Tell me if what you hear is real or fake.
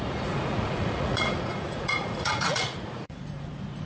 fake